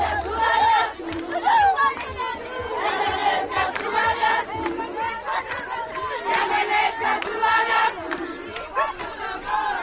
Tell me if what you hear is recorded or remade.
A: recorded